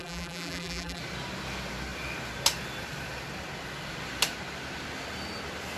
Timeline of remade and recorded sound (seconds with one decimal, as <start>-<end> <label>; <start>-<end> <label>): 0.0-1.0 remade; 1.0-5.8 recorded